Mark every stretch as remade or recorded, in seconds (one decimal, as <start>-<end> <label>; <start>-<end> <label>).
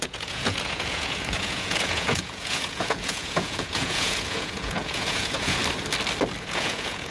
0.0-5.6 remade; 5.6-6.4 recorded; 6.4-7.1 remade